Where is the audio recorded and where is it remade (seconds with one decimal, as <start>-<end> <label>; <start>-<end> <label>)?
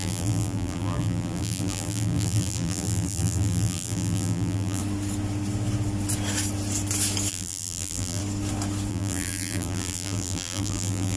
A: 0.0-4.8 remade; 4.8-7.3 recorded; 7.3-8.2 remade; 8.2-8.9 recorded; 8.9-11.2 remade